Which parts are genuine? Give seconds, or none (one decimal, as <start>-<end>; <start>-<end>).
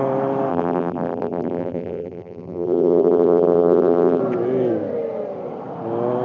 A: 0.0-0.5; 4.2-6.2